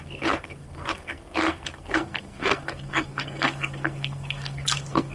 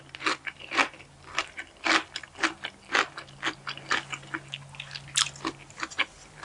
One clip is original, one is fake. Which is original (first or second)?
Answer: second